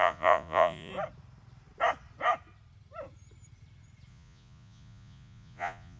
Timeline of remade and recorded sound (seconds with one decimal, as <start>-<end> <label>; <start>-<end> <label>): 0.0-0.9 remade; 0.9-4.1 recorded; 4.1-6.0 remade